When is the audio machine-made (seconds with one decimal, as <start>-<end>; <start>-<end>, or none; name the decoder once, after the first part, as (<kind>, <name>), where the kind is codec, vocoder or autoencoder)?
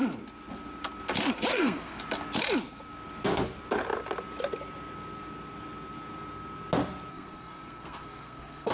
1.5-2.0 (codec, SNAC); 7.1-8.7